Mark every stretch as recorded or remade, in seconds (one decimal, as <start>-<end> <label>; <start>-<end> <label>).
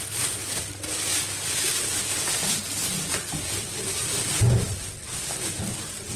0.0-2.4 recorded; 2.4-3.8 remade; 3.8-6.2 recorded